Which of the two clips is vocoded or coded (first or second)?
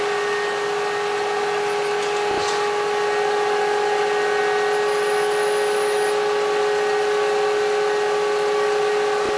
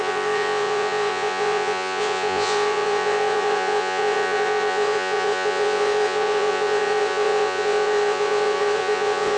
second